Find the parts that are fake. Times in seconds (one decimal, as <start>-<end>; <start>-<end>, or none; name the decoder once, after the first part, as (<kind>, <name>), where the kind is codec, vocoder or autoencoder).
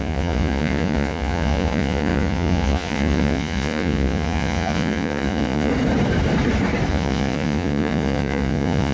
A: 0.0-5.7 (vocoder, Vocos); 6.9-8.9